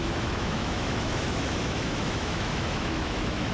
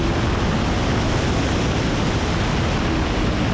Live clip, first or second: second